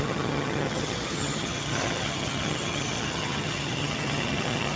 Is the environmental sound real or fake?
fake